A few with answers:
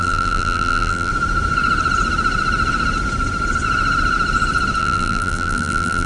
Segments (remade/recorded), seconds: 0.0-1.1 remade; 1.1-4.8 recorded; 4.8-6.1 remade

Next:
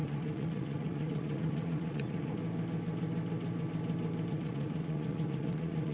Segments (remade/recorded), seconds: 0.0-2.4 remade; 2.4-4.3 recorded; 4.3-5.9 remade

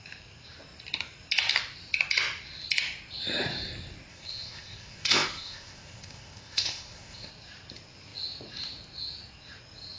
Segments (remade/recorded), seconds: 0.0-4.1 recorded; 4.1-7.3 remade; 7.3-10.0 recorded